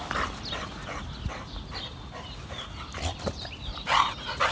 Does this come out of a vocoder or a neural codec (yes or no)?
no